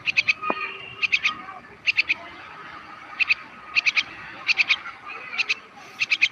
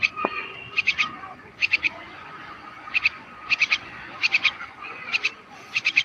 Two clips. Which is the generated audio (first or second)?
second